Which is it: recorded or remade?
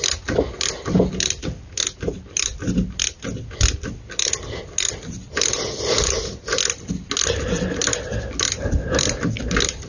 recorded